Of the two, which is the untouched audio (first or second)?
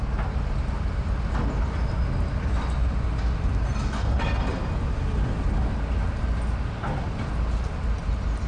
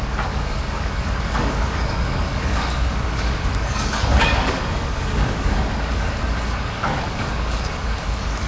first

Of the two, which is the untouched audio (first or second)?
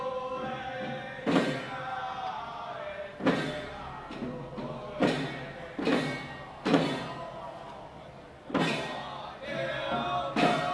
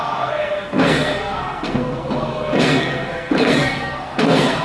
first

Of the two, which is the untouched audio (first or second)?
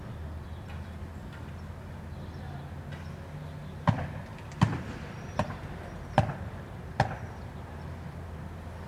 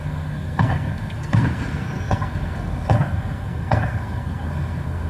first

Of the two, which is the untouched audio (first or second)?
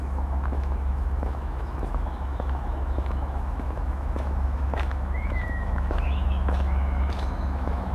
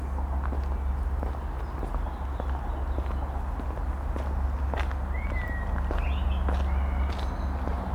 second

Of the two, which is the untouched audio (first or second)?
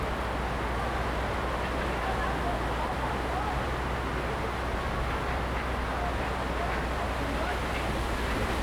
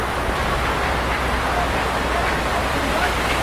first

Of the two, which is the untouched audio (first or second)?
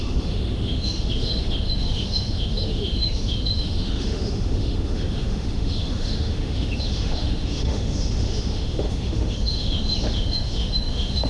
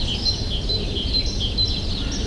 second